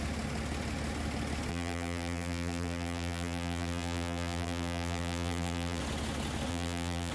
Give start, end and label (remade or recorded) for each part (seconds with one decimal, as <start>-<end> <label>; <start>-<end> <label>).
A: 0.0-1.5 recorded; 1.5-5.8 remade; 5.8-6.5 recorded; 6.5-7.1 remade